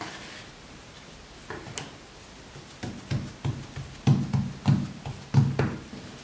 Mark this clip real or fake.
real